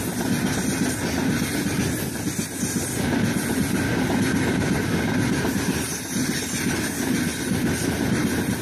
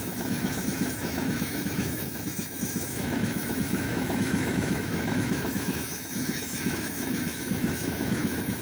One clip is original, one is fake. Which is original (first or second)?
first